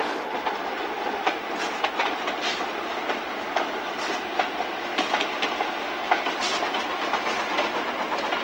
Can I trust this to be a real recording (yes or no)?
yes